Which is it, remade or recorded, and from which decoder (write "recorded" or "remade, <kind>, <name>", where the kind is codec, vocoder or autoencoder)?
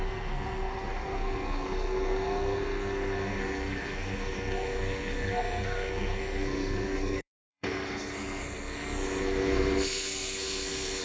remade, codec, SNAC